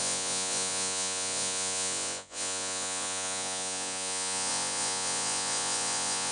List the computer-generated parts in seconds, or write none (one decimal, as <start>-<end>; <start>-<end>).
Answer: 0.0-6.3